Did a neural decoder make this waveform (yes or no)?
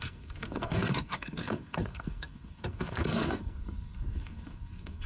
yes